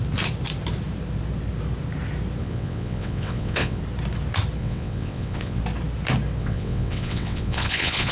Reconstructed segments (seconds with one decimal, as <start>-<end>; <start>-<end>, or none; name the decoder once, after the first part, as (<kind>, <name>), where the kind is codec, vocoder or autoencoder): 2.4-3.8 (vocoder, WaveNeXt); 4.6-5.6; 6.4-8.1